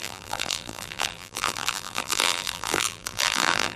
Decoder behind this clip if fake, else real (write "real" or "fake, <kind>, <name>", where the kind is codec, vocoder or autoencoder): fake, vocoder, BigVGAN v2